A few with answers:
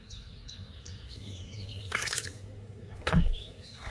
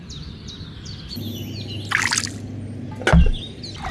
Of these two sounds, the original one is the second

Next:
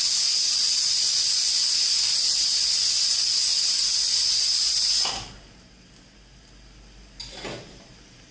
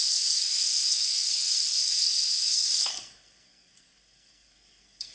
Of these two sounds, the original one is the first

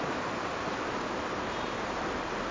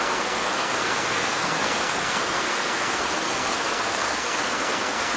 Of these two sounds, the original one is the first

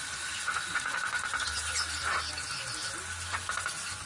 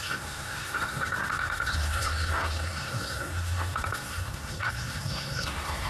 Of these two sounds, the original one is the first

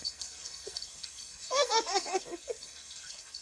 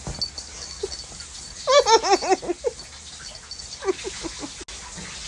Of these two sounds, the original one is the second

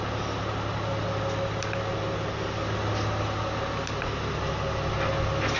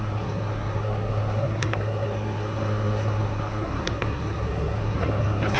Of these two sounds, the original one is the first